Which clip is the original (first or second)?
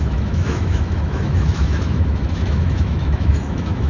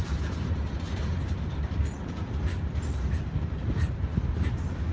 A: second